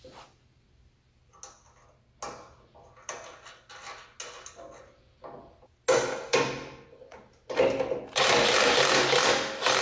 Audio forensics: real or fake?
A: real